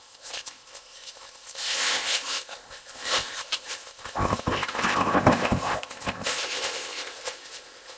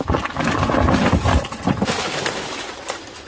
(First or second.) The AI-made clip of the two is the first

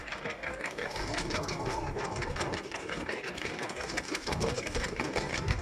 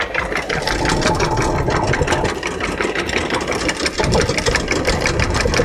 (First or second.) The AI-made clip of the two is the first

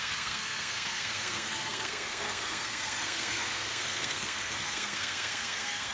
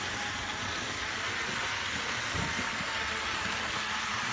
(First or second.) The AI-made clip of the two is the first